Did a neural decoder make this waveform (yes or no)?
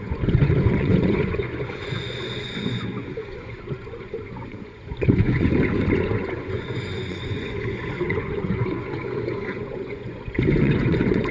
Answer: yes